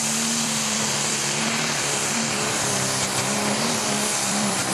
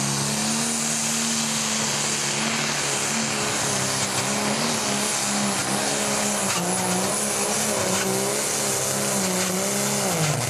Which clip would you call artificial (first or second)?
first